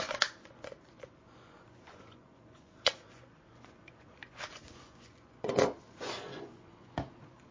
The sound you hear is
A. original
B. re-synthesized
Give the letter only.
B